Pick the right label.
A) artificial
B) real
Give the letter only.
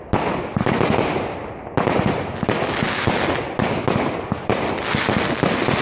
B